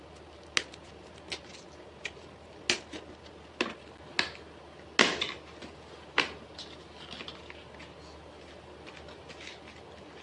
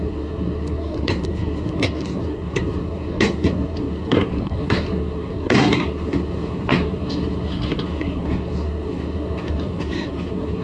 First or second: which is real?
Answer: first